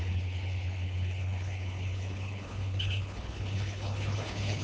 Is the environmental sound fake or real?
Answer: fake